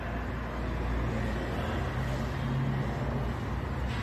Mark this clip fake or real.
real